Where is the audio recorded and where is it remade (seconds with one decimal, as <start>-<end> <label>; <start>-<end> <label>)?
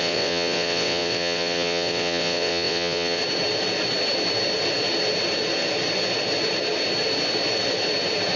0.0-3.2 remade; 3.2-8.4 recorded